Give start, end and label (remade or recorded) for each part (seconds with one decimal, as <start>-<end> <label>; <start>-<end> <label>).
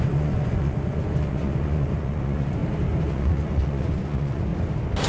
0.0-2.6 remade; 2.6-3.1 recorded; 3.1-4.5 remade; 4.5-5.1 recorded